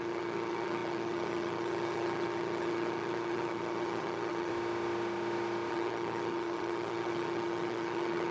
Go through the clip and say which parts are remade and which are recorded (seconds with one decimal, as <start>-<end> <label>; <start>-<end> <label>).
0.0-4.5 remade; 4.5-5.7 recorded; 5.7-8.3 remade

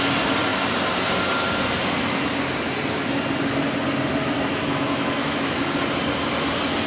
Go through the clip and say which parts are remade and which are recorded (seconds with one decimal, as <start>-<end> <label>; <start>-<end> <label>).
0.0-4.5 recorded; 4.5-5.6 remade; 5.6-6.9 recorded

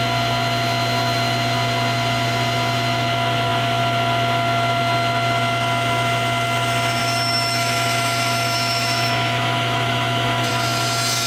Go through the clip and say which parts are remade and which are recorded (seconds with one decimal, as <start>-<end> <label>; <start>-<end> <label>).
0.0-7.0 recorded; 7.0-10.5 remade; 10.5-11.3 recorded

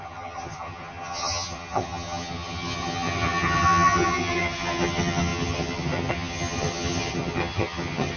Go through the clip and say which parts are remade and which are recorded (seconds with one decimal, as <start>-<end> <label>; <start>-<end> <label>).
0.0-8.2 remade

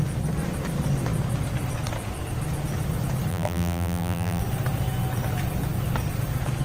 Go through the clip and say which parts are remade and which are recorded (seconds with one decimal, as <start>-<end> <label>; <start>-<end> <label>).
0.0-3.3 recorded; 3.3-4.4 remade; 4.4-6.6 recorded